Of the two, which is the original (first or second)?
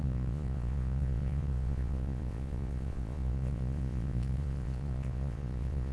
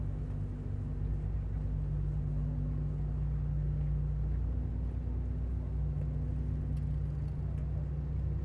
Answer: second